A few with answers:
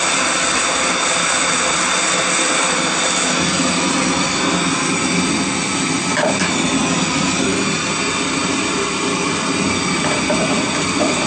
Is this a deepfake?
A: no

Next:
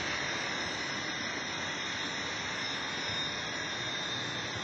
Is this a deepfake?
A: no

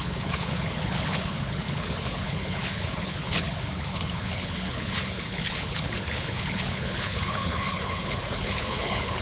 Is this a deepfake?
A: yes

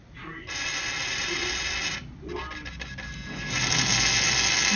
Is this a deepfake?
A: no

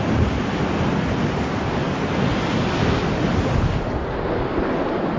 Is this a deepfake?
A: no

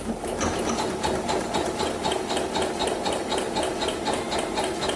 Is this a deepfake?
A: no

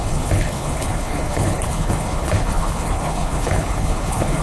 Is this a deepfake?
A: yes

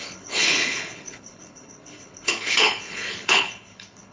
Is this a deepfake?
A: yes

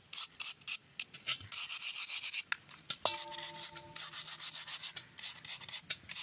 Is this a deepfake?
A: no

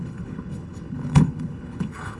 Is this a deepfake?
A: yes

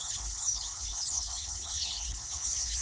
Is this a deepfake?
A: yes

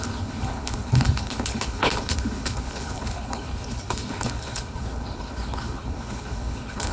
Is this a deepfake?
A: yes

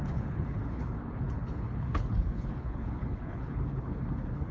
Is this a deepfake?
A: yes